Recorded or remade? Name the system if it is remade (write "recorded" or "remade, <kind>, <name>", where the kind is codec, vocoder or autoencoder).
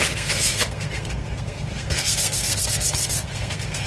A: remade, codec, SNAC